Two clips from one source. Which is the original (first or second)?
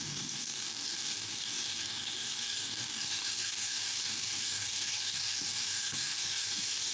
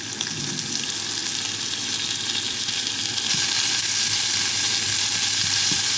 second